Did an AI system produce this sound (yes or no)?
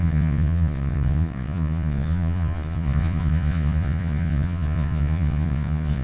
yes